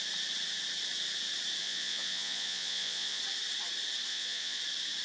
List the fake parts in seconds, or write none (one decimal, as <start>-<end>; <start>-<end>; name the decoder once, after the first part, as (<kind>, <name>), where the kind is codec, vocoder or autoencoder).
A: 1.6-3.2 (vocoder, Vocos); 4.1-4.6